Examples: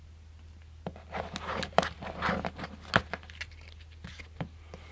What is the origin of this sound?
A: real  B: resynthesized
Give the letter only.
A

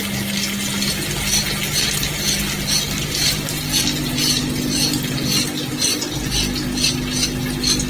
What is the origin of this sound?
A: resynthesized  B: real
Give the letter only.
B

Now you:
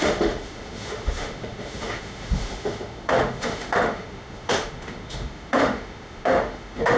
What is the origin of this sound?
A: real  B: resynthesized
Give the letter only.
B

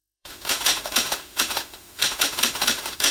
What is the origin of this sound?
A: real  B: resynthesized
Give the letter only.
B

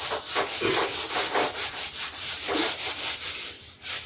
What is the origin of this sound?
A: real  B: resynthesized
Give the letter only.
A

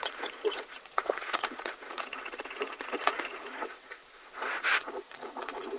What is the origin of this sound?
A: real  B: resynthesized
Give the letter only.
B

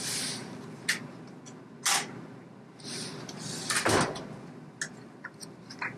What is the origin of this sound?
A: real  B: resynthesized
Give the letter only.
A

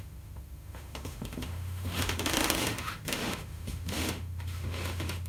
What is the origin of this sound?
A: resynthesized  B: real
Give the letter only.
A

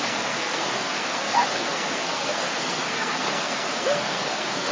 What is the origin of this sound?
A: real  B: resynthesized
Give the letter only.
B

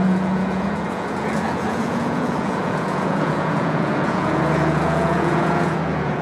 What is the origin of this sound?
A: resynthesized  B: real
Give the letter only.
A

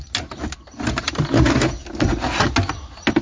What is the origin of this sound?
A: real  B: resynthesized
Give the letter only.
A